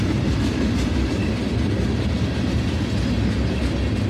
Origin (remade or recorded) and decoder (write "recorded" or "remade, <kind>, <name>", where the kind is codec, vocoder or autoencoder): recorded